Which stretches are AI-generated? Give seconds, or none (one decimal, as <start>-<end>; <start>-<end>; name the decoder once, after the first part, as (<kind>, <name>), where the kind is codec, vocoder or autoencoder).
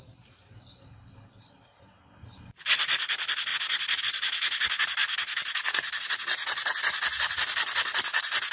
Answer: 0.0-1.9 (vocoder, BigVGAN v2); 2.4-5.0; 6.0-8.5